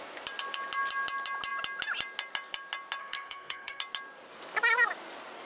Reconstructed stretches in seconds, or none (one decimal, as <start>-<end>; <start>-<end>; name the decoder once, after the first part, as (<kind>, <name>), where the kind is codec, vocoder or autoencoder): 3.0-3.8 (codec, SNAC)